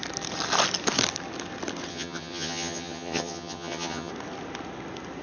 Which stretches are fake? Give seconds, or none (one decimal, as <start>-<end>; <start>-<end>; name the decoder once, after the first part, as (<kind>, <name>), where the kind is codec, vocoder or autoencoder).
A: 1.9-4.1 (vocoder, HiFi-GAN)

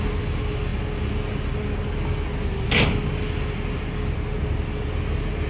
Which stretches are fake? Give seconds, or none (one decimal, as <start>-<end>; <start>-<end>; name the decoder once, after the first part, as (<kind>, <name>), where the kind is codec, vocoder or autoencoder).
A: none